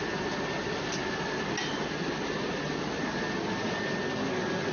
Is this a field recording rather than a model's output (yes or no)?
yes